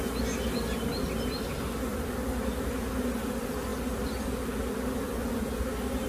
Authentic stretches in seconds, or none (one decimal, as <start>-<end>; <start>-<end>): 0.0-3.7; 4.2-6.1